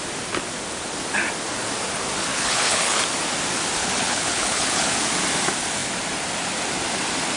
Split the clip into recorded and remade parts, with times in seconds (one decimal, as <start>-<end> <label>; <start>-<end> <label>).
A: 0.0-2.3 recorded; 2.3-3.0 remade; 3.0-3.8 recorded; 3.8-4.9 remade; 4.9-7.4 recorded